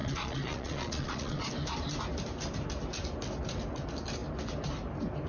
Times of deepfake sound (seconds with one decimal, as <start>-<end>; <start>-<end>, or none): 0.0-1.5